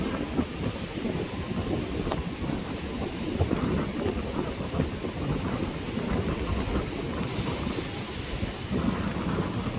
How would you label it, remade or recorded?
recorded